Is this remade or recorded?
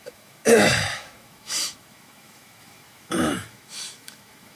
remade